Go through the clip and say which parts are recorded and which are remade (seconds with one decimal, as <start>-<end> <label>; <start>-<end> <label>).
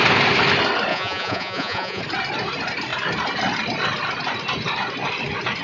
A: 0.0-0.9 recorded; 0.9-2.0 remade; 2.0-5.6 recorded